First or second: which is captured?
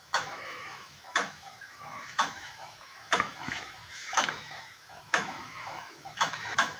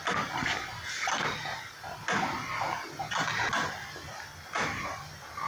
second